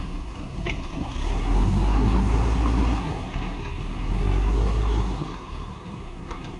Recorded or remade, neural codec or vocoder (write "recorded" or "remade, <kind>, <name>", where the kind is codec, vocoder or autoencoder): remade, codec, SNAC